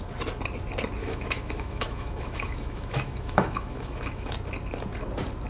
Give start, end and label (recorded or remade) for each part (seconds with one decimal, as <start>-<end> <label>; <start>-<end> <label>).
0.0-1.0 recorded; 1.0-4.3 remade; 4.3-5.5 recorded